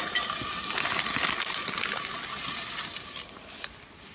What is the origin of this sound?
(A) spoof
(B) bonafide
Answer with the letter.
B